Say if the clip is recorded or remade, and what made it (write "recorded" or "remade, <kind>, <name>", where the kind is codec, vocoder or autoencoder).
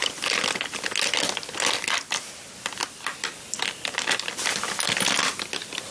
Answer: recorded